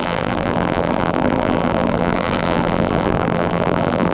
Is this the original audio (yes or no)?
no